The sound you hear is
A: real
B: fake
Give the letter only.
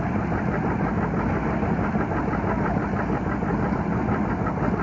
A